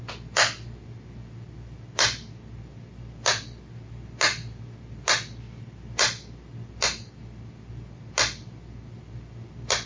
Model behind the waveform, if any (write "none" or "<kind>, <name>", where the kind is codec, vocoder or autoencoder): none